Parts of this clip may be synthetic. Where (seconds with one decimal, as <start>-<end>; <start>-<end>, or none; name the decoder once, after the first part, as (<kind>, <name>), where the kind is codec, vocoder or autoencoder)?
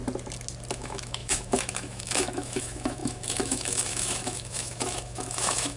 0.7-5.8 (autoencoder, DAC-VAE)